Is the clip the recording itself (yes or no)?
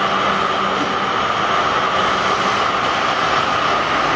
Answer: yes